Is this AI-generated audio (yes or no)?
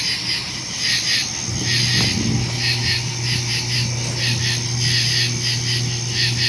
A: no